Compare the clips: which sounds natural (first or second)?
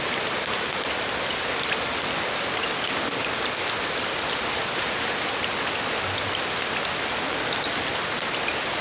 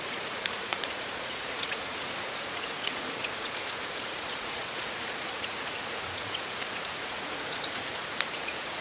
first